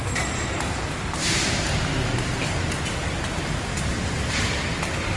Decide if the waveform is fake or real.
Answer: real